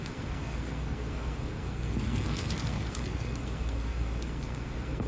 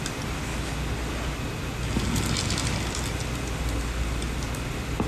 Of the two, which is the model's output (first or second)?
first